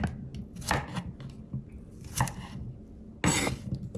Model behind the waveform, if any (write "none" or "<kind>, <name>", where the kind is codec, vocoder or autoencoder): none